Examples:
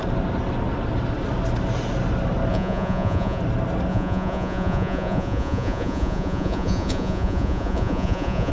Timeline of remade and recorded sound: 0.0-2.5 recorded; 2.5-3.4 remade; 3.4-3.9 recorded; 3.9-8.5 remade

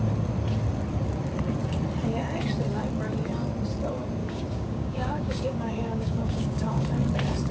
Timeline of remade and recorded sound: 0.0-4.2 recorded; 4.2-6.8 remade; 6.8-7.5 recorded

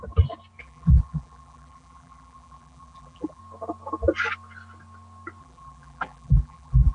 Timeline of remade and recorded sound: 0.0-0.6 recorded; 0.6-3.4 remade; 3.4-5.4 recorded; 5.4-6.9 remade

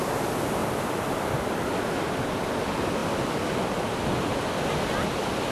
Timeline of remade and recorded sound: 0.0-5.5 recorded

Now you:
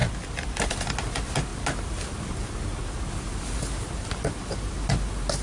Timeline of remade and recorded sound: 0.0-5.4 recorded